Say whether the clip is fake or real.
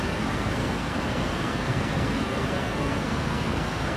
fake